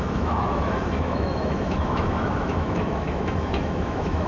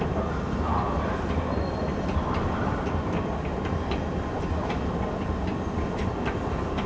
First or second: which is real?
second